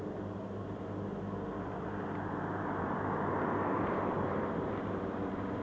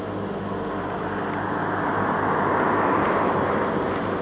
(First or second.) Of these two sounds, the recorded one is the second